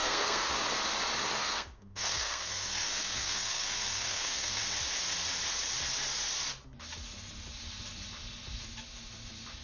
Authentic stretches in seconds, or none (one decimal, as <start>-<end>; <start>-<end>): 0.5-1.4; 4.6-9.6